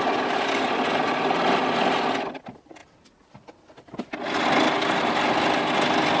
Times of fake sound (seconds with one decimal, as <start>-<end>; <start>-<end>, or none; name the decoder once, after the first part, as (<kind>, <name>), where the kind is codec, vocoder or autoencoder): none